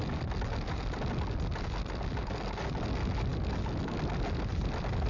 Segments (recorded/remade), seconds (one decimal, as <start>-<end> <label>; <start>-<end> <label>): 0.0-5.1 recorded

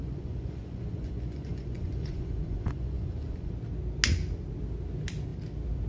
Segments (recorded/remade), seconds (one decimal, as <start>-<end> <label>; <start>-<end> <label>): 0.0-3.5 remade; 3.5-5.9 recorded

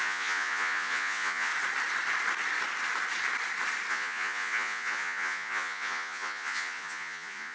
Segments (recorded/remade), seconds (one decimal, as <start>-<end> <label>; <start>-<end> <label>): 0.0-1.5 remade; 1.5-3.9 recorded; 3.9-7.5 remade

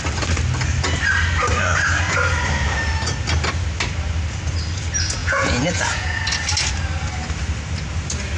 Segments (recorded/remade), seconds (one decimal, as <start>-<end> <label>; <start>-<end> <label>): 0.0-5.2 recorded; 5.2-6.2 remade; 6.2-8.4 recorded

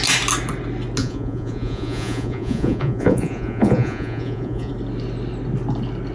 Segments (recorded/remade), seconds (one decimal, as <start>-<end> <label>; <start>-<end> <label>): 0.0-1.0 recorded; 1.0-4.7 remade; 4.7-6.1 recorded